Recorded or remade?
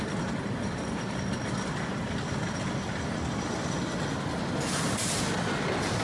recorded